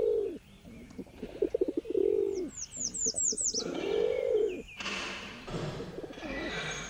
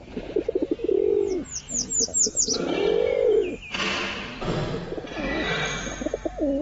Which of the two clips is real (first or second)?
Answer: second